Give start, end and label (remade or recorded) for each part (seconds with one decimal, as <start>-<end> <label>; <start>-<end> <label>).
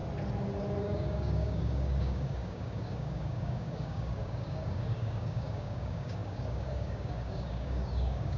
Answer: 0.0-0.8 recorded; 0.8-8.4 remade